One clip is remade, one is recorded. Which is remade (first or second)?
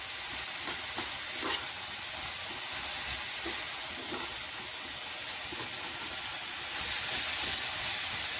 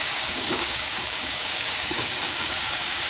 second